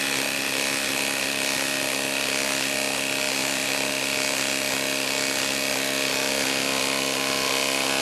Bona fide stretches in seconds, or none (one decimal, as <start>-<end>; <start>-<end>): 0.0-3.4; 3.9-8.0